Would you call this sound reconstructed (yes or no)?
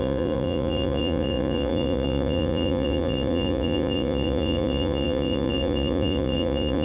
yes